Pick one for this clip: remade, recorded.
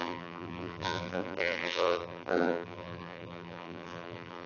remade